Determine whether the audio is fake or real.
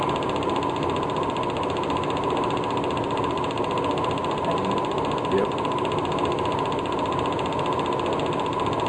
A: real